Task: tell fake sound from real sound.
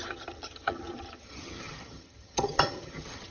fake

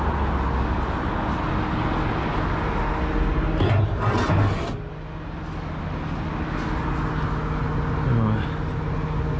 real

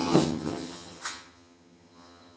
fake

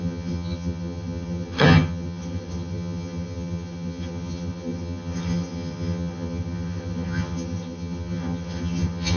fake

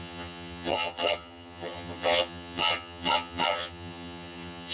fake